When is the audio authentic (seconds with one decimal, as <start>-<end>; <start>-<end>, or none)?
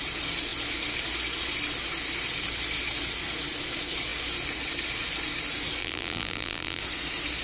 0.0-5.8; 6.8-7.4